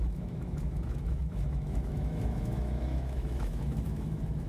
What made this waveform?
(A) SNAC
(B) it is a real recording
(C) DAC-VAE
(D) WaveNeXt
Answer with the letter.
C